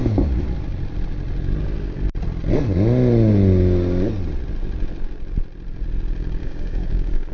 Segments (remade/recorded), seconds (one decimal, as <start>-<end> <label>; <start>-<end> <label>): 0.0-6.4 recorded; 6.4-7.3 remade